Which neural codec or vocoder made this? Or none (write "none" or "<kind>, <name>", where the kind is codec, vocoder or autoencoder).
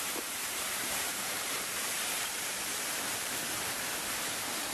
vocoder, BigVGAN v2